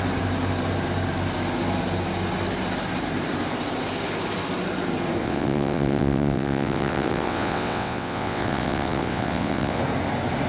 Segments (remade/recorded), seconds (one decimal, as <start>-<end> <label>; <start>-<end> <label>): 0.0-5.2 recorded; 5.2-9.8 remade; 9.8-10.5 recorded